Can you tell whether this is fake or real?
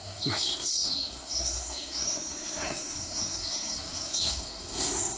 fake